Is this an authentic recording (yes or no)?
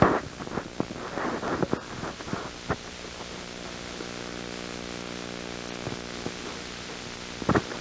yes